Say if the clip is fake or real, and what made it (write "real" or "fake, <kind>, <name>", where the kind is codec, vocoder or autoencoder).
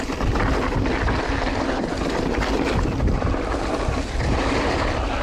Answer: real